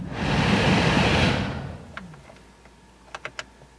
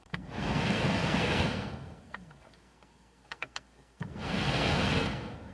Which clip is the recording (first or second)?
first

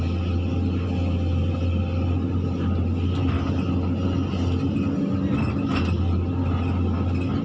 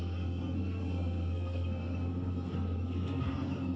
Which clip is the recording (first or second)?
first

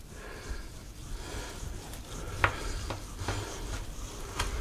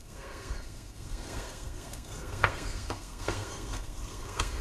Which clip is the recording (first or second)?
first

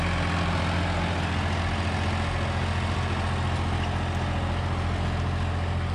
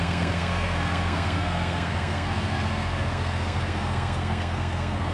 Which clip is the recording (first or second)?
first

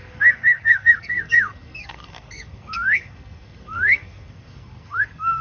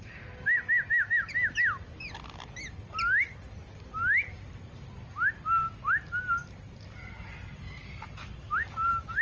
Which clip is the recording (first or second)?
second